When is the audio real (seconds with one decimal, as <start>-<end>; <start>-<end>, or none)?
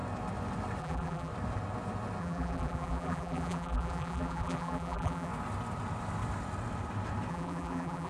0.0-0.8; 1.3-2.2; 5.3-7.3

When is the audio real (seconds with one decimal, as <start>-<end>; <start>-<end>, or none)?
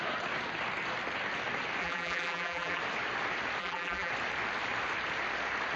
0.0-1.8; 2.8-3.6; 4.1-5.8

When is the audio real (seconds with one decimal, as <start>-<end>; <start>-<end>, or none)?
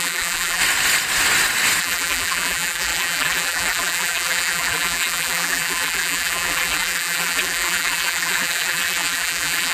0.6-1.8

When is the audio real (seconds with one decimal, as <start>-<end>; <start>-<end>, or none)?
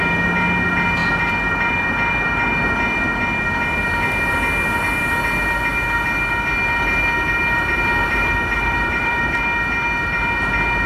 0.0-8.0; 9.4-10.9